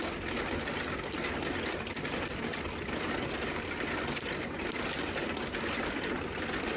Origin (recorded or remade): recorded